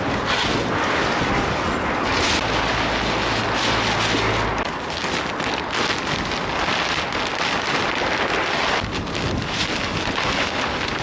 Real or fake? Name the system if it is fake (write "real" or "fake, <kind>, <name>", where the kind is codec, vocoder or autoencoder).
real